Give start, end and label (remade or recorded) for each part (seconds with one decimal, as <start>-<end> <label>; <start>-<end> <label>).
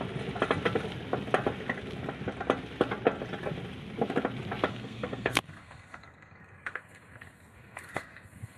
0.0-4.7 recorded; 4.7-8.6 remade